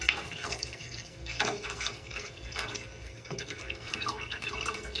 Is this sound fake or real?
fake